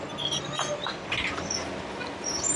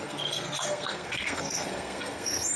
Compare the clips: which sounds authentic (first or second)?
first